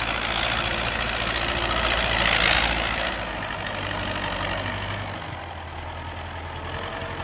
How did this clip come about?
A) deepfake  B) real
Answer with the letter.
B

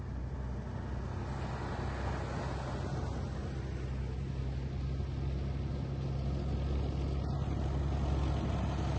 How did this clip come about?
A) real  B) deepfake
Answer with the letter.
A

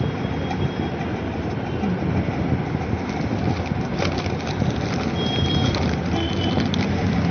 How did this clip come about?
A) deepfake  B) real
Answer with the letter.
B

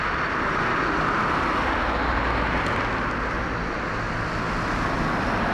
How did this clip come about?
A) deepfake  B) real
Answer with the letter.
B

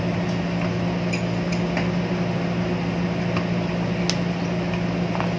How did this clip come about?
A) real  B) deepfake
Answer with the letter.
A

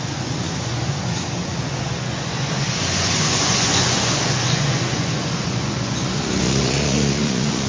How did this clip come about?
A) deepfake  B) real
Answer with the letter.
A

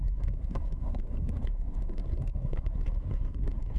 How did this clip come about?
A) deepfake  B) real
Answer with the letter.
A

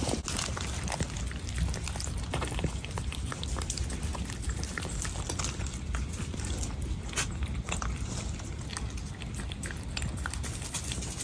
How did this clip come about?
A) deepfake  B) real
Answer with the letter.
B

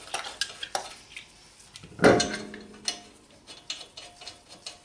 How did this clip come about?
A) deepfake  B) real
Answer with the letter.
B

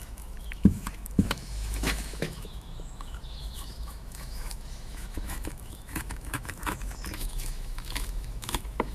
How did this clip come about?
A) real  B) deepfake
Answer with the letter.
B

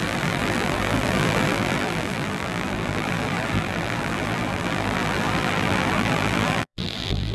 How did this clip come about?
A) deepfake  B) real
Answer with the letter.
A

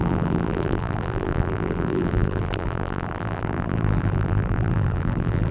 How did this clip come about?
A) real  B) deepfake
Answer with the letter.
B